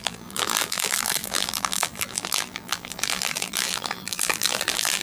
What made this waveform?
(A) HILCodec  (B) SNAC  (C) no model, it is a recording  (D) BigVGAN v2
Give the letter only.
D